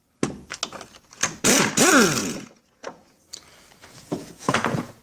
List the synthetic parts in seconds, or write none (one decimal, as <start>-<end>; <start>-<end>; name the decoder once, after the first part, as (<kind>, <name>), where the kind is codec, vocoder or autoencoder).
2.2-3.2 (vocoder, Vocos); 3.8-5.0